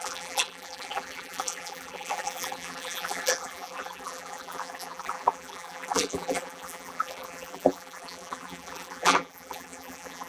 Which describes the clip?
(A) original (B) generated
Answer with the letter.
B